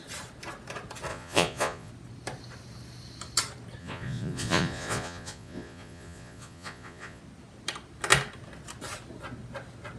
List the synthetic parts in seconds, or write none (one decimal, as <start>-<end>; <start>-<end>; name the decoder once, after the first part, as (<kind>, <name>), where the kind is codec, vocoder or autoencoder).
1.1-1.9 (vocoder, Vocos); 3.8-7.2

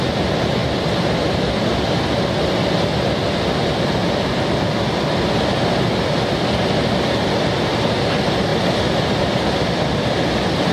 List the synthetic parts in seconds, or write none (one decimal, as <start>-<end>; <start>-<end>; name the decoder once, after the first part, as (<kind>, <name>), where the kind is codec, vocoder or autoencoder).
0.6-1.5 (vocoder, BigVGAN v2); 8.5-9.2

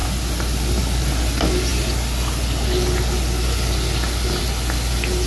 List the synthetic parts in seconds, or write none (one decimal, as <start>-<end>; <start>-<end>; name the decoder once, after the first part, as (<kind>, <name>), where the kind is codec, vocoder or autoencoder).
none

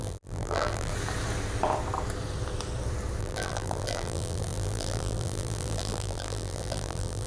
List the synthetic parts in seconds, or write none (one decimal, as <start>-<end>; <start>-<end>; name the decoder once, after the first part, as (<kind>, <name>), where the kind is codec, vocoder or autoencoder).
0.0-0.9 (vocoder, BigVGAN v2); 3.2-7.3

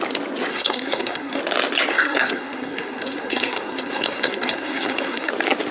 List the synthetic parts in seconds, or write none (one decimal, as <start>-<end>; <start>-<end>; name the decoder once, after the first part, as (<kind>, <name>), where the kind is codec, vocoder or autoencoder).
0.5-1.4 (codec, SNAC); 1.9-5.3